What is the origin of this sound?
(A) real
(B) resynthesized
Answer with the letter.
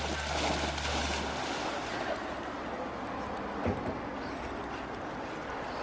A